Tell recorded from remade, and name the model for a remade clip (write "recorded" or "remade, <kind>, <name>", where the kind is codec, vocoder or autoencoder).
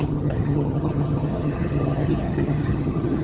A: remade, vocoder, HiFi-GAN